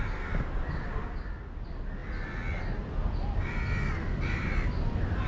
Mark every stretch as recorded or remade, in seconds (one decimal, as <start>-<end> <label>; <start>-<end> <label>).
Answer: 0.0-5.3 recorded